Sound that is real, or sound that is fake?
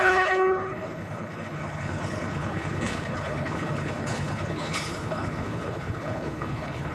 fake